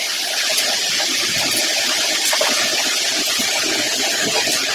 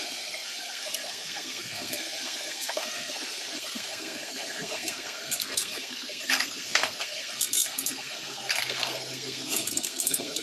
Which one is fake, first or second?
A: second